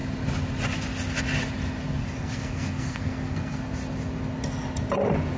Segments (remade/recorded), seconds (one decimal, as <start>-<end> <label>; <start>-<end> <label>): 0.0-2.0 recorded; 2.0-3.6 remade; 3.6-5.4 recorded